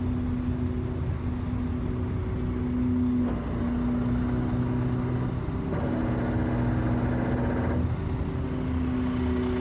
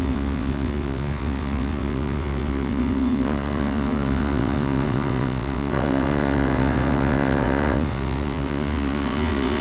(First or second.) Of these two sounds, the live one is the first